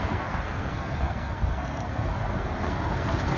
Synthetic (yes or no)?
yes